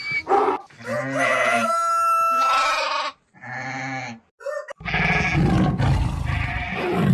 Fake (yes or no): no